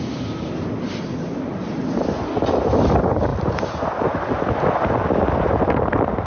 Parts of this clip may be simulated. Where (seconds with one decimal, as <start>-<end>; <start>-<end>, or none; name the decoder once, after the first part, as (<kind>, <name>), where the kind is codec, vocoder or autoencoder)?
none